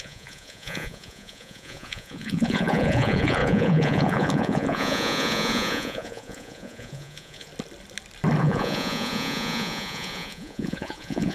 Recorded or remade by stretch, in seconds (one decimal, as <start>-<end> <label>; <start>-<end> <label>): 0.0-7.5 remade; 7.5-8.4 recorded; 8.4-11.3 remade